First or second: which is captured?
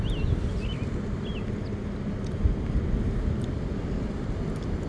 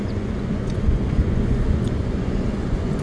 first